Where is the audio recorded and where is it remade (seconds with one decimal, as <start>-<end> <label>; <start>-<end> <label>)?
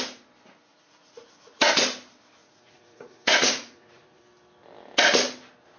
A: 0.0-0.7 recorded; 0.7-1.7 remade; 1.7-2.4 recorded; 2.4-4.2 remade; 4.2-5.8 recorded